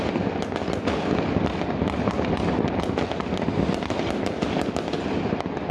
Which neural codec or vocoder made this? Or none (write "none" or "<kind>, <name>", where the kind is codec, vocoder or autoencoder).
none